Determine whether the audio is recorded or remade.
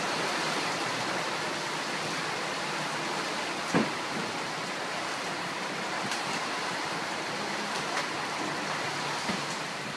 recorded